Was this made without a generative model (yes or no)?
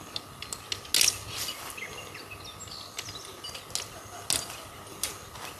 yes